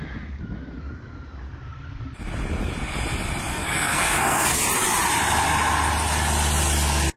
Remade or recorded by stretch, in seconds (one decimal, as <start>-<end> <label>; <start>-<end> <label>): 0.0-3.5 recorded; 3.5-4.6 remade; 4.6-7.2 recorded